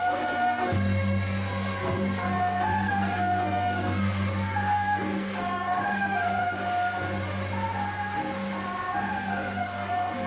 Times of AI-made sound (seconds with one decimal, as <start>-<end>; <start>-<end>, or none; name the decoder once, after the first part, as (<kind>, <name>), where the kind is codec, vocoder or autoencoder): 0.0-6.4 (codec, SNAC); 9.1-10.3